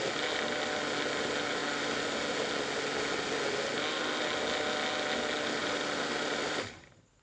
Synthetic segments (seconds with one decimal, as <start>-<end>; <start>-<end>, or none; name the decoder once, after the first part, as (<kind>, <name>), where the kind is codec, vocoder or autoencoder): 5.6-7.2 (vocoder, BigVGAN v2)